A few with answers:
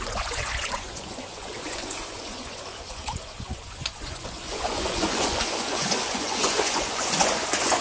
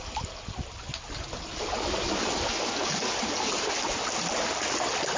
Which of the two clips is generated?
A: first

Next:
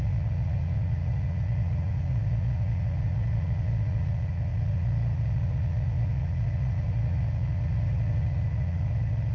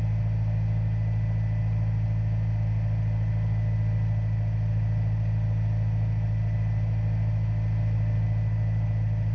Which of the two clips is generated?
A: first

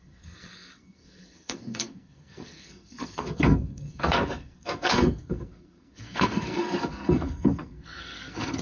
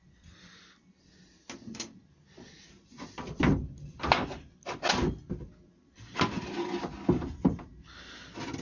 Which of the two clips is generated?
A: first